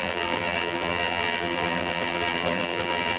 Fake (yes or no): yes